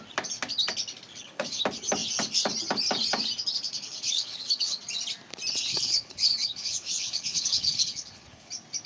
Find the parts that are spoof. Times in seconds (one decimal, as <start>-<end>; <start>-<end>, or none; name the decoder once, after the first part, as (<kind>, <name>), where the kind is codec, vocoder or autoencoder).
1.1-1.6 (codec, HILCodec); 3.7-4.8; 5.7-8.5